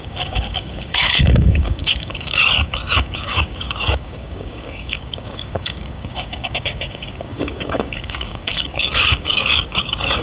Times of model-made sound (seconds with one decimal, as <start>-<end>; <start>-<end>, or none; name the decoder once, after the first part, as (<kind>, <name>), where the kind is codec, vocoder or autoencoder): 0.0-10.2 (codec, DAC)